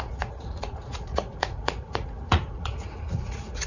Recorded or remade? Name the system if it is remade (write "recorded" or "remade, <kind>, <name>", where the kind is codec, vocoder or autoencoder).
remade, vocoder, Vocos